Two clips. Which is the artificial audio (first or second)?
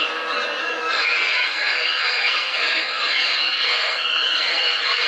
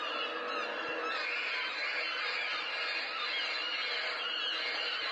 first